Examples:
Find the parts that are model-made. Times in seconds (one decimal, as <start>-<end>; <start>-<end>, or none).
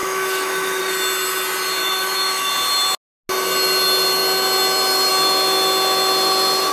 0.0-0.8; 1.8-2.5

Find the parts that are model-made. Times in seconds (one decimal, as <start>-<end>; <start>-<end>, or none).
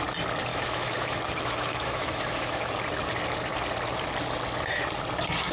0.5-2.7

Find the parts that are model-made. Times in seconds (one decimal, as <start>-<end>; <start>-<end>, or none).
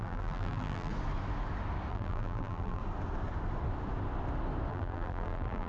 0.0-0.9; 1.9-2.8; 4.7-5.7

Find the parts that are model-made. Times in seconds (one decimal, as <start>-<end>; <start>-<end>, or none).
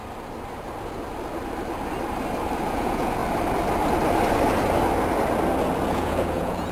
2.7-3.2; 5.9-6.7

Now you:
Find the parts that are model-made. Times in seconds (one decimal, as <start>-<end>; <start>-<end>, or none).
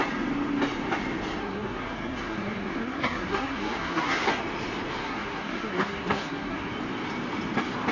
1.4-4.4; 5.0-6.7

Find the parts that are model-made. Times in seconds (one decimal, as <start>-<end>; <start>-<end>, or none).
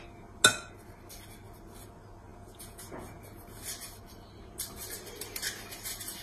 2.3-3.2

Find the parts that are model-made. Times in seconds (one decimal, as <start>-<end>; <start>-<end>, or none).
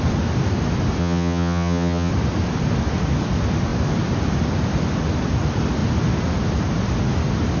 1.0-2.1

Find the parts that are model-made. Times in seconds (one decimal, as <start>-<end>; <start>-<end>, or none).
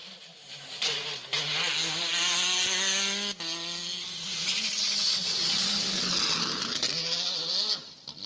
none